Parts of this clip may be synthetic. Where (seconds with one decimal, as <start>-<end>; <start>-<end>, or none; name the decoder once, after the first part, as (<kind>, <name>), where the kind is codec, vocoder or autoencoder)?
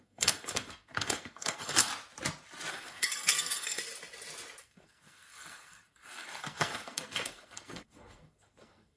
0.0-1.9 (codec, SNAC); 2.7-3.8; 4.6-9.0